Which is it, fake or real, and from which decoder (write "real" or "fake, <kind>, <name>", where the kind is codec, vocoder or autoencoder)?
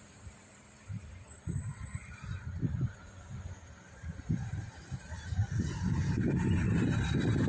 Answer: fake, vocoder, BigVGAN v2